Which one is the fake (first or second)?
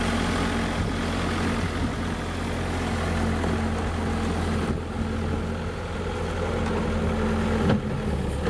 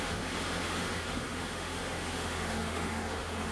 second